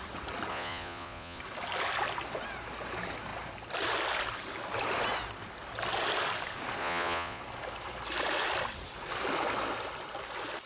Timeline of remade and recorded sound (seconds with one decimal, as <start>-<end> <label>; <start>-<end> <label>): 0.0-0.5 recorded; 0.5-1.4 remade; 1.4-6.8 recorded; 6.8-7.4 remade; 7.4-10.7 recorded